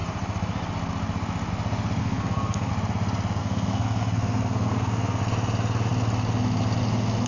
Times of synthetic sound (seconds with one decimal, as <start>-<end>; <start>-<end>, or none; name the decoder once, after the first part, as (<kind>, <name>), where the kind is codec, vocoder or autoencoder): 2.0-2.7 (codec, SNAC); 3.4-5.2